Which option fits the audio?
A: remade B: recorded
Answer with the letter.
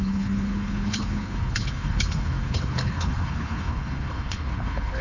A